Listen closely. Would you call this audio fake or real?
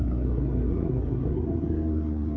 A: fake